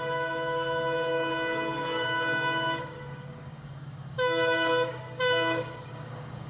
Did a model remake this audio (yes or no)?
yes